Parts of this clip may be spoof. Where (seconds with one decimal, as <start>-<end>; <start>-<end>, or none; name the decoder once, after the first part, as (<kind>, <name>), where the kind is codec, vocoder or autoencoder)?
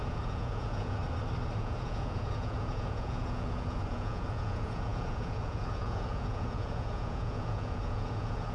0.0-1.0 (vocoder, Vocos); 1.6-8.5